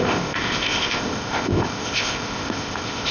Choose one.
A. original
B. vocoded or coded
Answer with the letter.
B